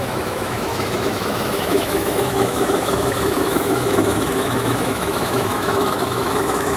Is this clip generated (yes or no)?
yes